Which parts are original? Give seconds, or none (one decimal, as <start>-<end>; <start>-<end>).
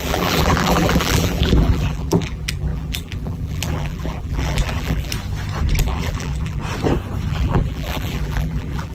5.1-5.8; 6.6-7.3